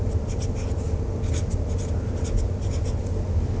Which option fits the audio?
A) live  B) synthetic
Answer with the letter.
A